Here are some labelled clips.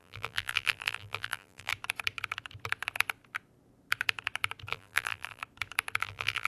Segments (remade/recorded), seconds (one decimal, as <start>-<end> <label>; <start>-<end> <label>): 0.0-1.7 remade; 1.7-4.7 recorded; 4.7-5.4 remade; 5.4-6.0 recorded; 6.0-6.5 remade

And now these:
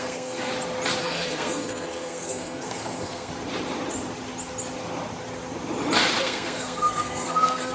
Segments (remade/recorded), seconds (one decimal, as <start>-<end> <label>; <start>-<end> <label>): 0.0-0.5 remade; 0.5-1.0 recorded; 1.0-3.3 remade; 3.3-6.2 recorded; 6.2-7.7 remade

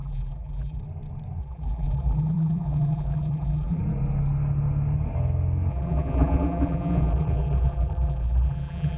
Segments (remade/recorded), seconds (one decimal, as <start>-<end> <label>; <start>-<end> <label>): 0.0-0.8 remade; 0.8-1.4 recorded; 1.4-3.8 remade; 3.8-5.7 recorded; 5.7-9.0 remade

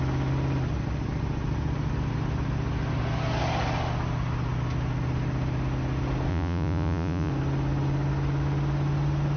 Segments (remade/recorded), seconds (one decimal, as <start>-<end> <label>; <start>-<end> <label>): 0.0-6.3 recorded; 6.3-7.3 remade; 7.3-9.4 recorded